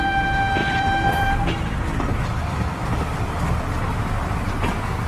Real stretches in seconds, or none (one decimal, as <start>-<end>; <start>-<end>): 0.0-0.6; 1.4-2.1; 3.1-5.1

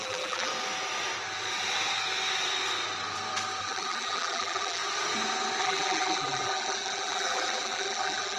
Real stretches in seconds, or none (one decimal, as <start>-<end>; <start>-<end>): 0.5-3.6; 4.8-5.6

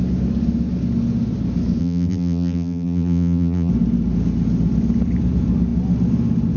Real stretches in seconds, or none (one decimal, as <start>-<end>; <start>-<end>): 0.0-1.8; 3.7-6.6

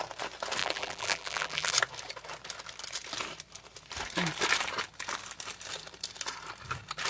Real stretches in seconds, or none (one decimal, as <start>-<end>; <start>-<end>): 0.0-0.6; 1.7-7.1

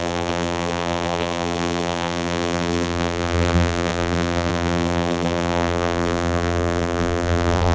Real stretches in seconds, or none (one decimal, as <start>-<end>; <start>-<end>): none